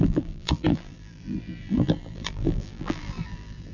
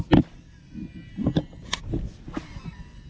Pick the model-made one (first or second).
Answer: first